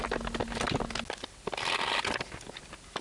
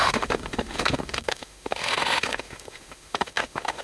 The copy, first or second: second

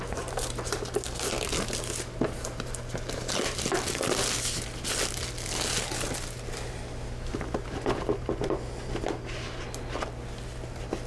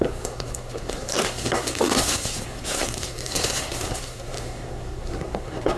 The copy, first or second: second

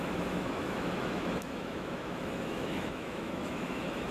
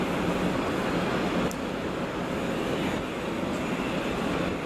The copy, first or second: first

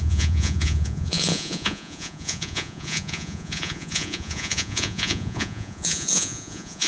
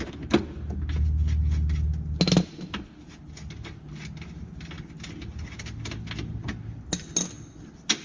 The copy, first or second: first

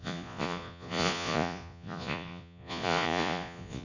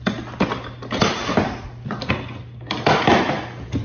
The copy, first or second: first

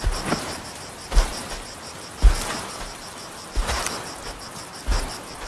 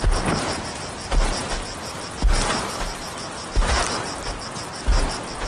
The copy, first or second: first